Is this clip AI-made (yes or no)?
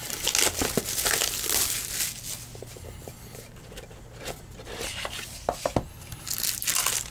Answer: no